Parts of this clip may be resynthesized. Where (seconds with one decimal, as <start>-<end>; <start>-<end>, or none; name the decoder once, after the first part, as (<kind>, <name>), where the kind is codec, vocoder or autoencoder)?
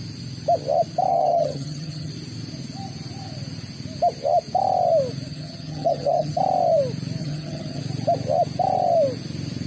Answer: 1.1-2.1 (vocoder, HiFi-GAN); 5.3-6.4; 7.2-7.8